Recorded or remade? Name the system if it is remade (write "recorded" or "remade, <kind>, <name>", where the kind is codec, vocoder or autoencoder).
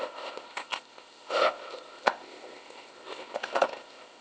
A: remade, codec, ZipCodec